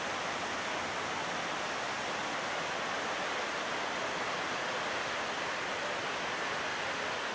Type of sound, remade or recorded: recorded